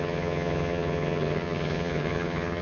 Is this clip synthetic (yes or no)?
yes